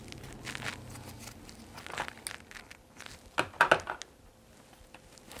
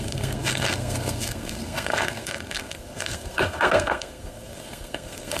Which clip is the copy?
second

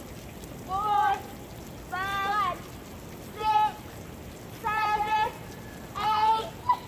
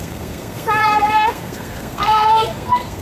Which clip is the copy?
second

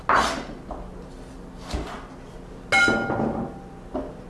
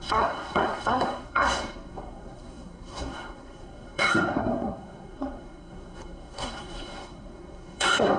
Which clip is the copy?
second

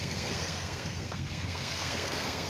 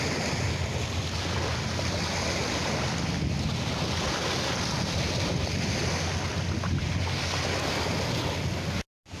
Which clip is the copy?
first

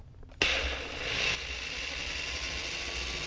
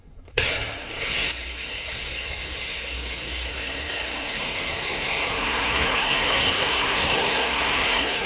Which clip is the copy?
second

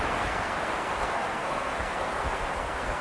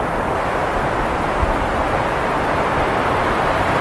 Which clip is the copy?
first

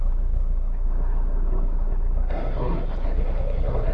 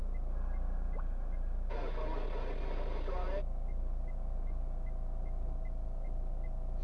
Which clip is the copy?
first